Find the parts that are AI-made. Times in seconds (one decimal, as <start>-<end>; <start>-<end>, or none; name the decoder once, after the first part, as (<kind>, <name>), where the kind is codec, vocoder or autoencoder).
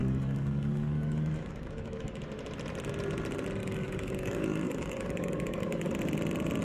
0.0-2.2 (codec, DAC); 3.6-5.9